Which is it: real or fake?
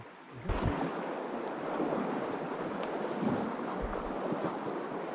real